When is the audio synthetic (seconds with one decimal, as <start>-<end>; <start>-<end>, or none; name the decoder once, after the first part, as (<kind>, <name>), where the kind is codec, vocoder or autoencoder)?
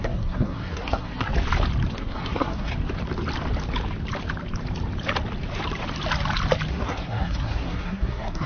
0.0-1.3 (codec, SNAC); 1.9-2.7; 6.7-8.5